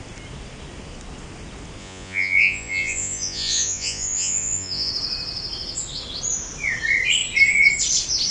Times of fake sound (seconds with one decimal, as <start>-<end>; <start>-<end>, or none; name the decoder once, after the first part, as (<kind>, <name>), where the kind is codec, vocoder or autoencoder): 1.8-4.9 (vocoder, Vocos)